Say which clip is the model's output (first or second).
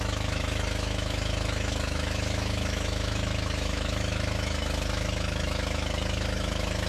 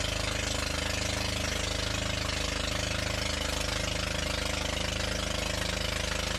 first